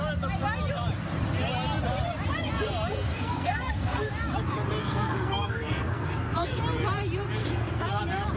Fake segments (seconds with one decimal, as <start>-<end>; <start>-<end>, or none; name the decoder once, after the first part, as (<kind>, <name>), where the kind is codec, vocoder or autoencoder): 3.1-4.1 (codec, SNAC); 4.8-6.6; 7.4-8.0